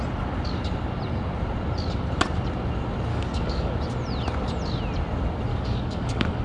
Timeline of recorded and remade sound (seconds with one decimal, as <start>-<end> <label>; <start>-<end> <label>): 0.0-3.1 recorded; 3.1-3.7 remade; 3.7-5.5 recorded; 5.5-6.4 remade